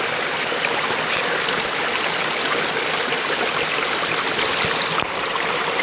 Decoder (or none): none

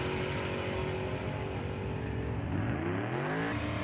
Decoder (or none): none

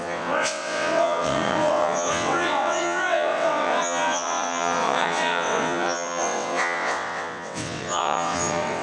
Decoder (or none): vocoder, WaveNeXt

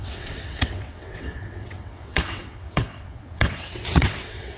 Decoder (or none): vocoder, WaveNeXt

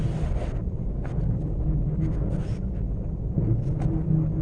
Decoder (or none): none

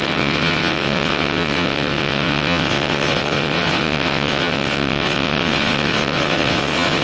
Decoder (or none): vocoder, WaveNeXt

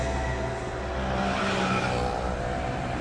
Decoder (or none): none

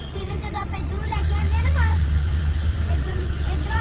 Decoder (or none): vocoder, WaveNeXt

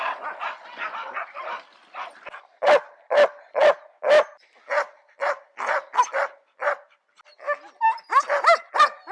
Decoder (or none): none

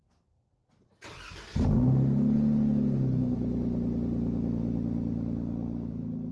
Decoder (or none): none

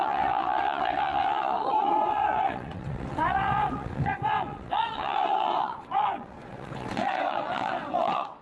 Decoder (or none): vocoder, WaveNeXt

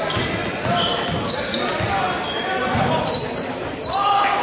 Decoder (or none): none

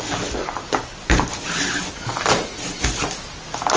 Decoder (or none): none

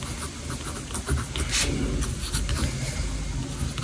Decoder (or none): none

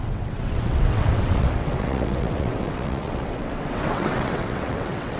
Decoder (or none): vocoder, WaveNeXt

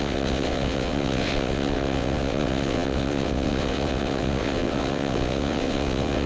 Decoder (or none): vocoder, WaveNeXt